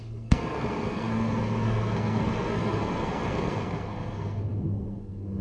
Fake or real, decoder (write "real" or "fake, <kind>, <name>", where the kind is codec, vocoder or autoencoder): fake, codec, SNAC